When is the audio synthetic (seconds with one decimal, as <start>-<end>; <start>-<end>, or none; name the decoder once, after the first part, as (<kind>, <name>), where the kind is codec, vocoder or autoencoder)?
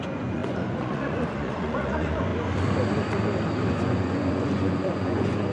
0.0-2.3 (vocoder, Vocos); 3.7-5.5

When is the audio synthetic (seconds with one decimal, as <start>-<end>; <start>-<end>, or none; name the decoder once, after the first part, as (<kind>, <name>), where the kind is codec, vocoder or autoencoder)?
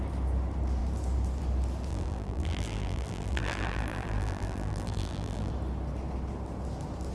1.9-5.5 (vocoder, BigVGAN v2)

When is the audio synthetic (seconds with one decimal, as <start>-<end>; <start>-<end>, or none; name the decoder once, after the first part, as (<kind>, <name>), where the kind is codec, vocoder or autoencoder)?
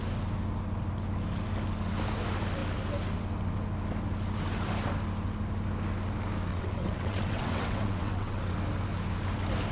6.5-8.4 (vocoder, WaveNeXt)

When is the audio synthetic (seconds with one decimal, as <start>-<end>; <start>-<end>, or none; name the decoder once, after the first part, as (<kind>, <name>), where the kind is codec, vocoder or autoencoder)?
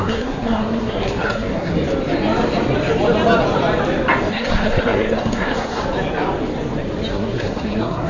0.0-1.7 (codec, SNAC); 4.3-5.8; 7.1-8.1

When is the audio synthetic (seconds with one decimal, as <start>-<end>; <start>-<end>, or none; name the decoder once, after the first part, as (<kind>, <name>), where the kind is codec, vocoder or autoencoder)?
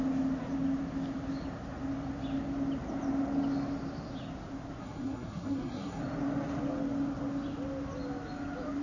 4.8-6.0 (codec, SNAC)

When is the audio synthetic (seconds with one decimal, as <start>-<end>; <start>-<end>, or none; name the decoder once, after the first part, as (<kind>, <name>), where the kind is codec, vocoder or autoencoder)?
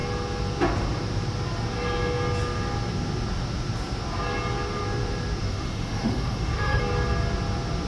5.4-6.8 (autoencoder, DAC-VAE)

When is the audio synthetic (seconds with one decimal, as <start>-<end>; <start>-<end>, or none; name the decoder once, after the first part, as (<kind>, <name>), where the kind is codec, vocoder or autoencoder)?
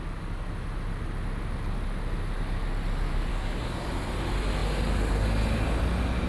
3.3-3.9 (codec, DAC)